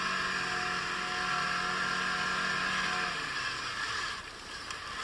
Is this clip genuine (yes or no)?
yes